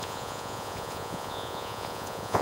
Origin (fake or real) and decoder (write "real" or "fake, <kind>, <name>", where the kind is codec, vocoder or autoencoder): fake, vocoder, Vocos